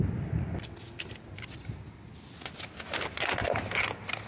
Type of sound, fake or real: real